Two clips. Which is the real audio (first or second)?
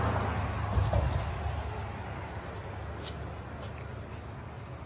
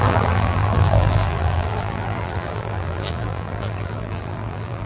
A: first